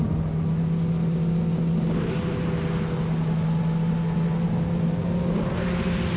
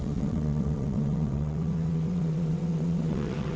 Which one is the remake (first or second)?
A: second